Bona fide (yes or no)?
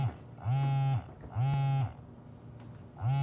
yes